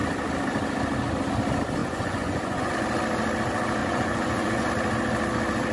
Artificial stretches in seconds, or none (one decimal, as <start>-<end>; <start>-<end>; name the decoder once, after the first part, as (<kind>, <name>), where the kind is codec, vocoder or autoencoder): 1.8-2.7 (vocoder, Vocos); 3.8-4.7